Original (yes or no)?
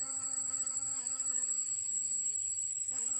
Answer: no